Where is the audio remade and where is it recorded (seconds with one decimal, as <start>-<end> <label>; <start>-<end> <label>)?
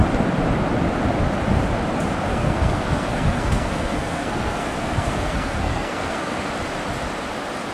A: 0.0-2.3 recorded; 2.3-6.5 remade; 6.5-7.7 recorded